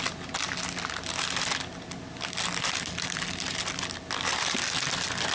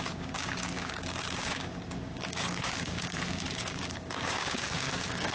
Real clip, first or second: first